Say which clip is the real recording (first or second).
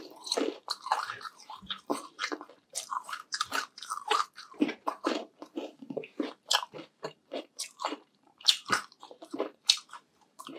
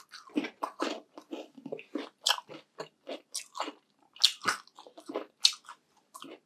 second